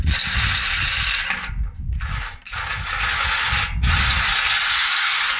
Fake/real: real